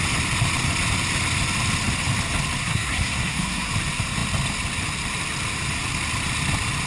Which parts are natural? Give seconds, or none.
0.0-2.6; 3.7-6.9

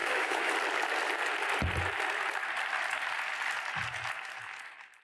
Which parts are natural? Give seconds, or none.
0.5-5.0

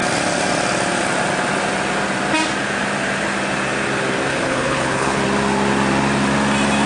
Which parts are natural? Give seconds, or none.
0.0-4.3; 5.2-6.9

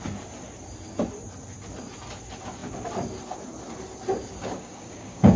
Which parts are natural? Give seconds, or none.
0.0-4.4